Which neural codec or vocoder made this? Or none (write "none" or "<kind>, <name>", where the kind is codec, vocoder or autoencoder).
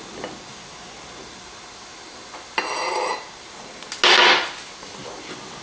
none